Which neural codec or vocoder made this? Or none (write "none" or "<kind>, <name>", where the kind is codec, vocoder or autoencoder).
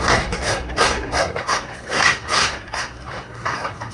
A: codec, SNAC